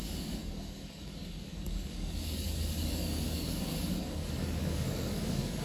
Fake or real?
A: fake